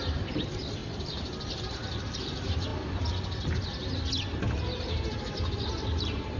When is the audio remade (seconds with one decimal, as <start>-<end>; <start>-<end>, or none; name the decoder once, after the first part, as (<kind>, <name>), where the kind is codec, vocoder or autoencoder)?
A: 0.0-2.7 (vocoder, BigVGAN v2); 4.6-6.4